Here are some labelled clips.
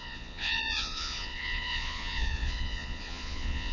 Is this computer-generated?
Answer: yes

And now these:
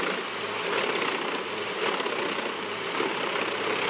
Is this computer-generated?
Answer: no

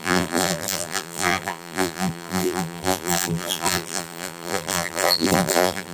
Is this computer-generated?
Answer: yes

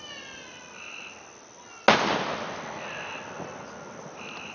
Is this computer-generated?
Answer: no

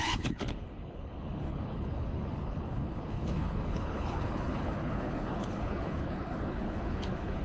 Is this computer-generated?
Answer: yes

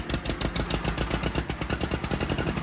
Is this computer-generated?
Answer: no